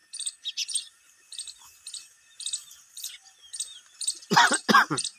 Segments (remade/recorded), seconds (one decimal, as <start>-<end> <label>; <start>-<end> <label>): 0.0-5.2 recorded